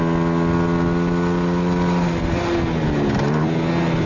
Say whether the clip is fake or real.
real